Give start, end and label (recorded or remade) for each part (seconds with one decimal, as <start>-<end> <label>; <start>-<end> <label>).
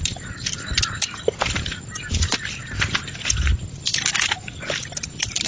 0.0-4.1 remade; 4.1-5.0 recorded; 5.0-5.5 remade